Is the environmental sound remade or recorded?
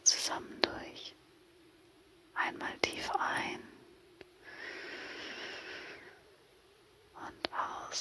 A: recorded